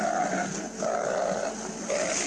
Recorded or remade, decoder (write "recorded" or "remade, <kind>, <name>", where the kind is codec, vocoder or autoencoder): recorded